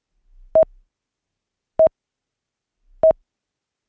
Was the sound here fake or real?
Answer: real